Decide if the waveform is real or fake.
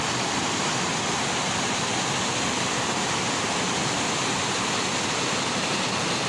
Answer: real